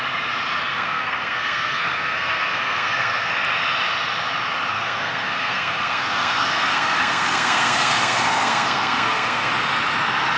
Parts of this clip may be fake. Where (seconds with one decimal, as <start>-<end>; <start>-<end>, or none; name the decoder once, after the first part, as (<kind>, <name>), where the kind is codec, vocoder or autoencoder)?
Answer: 0.7-3.3 (codec, SNAC); 4.7-9.5